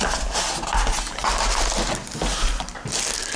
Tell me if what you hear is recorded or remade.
recorded